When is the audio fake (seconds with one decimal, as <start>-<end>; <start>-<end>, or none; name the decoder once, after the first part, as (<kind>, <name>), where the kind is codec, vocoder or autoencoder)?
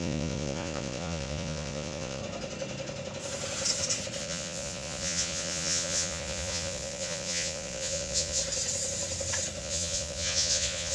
0.0-2.2 (vocoder, Vocos); 4.2-8.4; 9.6-10.9